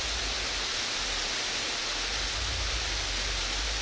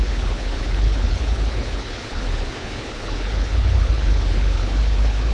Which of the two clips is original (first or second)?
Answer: first